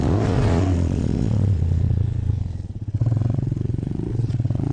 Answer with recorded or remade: remade